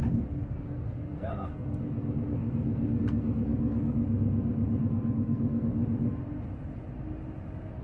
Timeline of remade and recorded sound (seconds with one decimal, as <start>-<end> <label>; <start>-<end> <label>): 0.0-4.0 remade; 4.0-4.8 recorded; 4.8-5.8 remade; 5.8-7.8 recorded